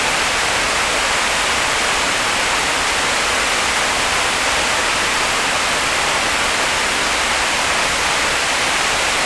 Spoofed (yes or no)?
no